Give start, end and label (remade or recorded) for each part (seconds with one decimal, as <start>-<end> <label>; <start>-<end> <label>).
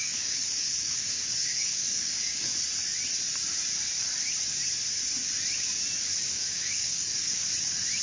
0.0-2.5 remade; 2.5-6.3 recorded; 6.3-7.4 remade; 7.4-8.0 recorded